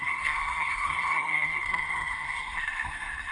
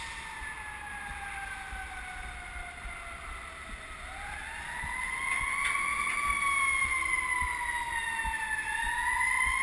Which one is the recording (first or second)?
second